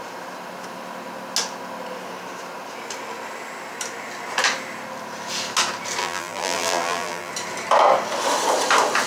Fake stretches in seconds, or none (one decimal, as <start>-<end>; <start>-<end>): 6.0-7.3